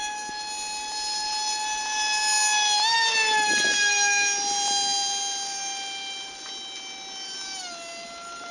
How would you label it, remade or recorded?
recorded